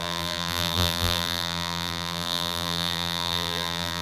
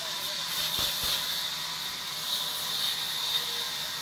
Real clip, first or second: second